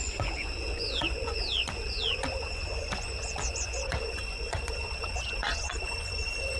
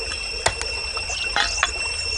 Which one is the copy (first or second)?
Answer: first